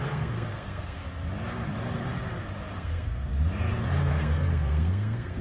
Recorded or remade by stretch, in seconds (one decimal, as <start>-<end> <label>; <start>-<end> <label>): 0.0-1.0 remade; 1.0-2.7 recorded; 2.7-3.3 remade; 3.3-4.1 recorded; 4.1-5.4 remade